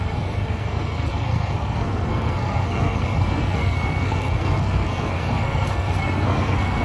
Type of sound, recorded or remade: remade